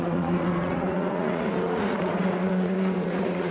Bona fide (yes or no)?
no